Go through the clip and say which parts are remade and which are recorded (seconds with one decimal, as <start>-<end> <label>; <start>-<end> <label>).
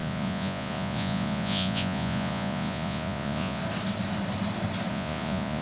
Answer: 0.0-3.6 remade; 3.6-4.9 recorded; 4.9-5.6 remade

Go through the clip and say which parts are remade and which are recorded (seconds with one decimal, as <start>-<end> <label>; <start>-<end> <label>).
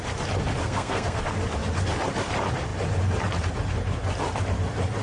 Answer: 0.0-0.6 recorded; 0.6-1.2 remade; 1.2-5.0 recorded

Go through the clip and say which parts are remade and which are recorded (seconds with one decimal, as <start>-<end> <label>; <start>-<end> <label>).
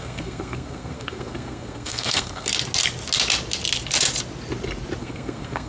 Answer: 0.0-2.5 remade; 2.5-5.0 recorded; 5.0-5.7 remade